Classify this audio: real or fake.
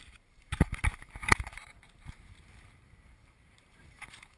fake